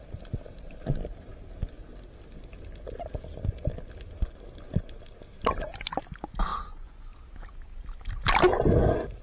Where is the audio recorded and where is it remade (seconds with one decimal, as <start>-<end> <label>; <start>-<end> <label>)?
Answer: 0.0-6.5 recorded; 6.5-7.1 remade; 7.1-9.2 recorded